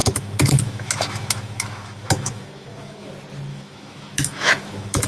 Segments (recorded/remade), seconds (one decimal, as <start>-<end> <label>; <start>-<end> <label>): 0.0-3.1 remade; 3.1-3.5 recorded; 3.5-5.1 remade